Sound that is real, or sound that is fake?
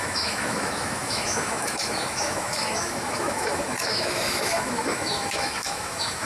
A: fake